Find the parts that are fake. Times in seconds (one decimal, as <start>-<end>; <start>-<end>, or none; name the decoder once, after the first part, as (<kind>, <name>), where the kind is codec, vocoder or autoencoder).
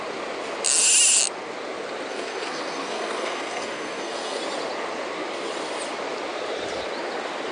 2.1-4.4 (codec, SNAC)